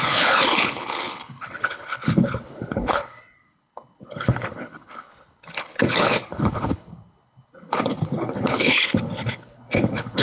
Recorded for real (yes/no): no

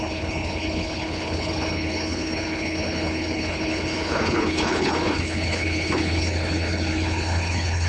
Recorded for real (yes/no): no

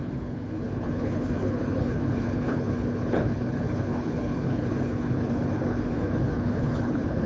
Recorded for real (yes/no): no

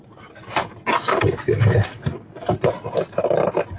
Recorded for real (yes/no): yes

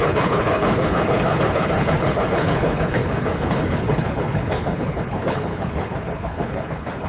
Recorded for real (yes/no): no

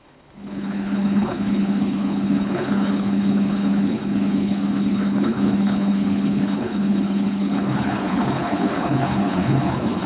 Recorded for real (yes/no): no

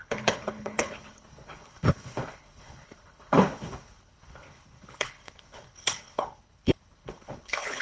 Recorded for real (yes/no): no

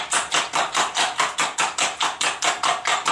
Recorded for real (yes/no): yes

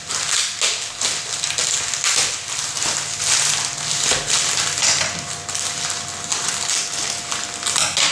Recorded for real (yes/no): yes